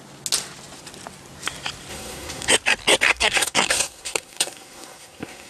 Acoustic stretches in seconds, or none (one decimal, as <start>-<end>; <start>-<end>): 0.0-1.9; 2.5-3.1